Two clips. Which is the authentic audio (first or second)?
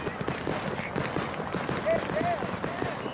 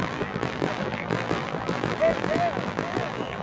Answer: first